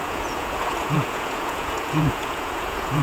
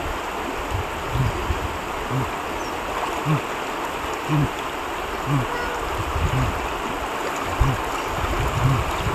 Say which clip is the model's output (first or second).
first